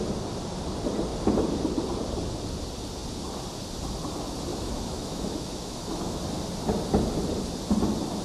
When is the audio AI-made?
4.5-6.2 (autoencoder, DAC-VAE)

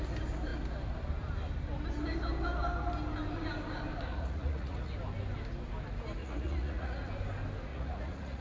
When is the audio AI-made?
4.1-4.9 (vocoder, Vocos); 6.2-7.1; 7.7-8.4

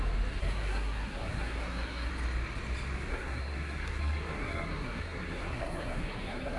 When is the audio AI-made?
0.4-2.1 (codec, SNAC); 3.1-6.6

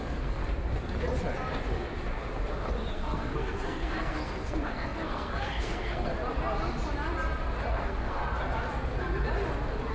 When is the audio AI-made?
0.0-0.4 (codec, SNAC); 2.9-6.1; 7.7-8.2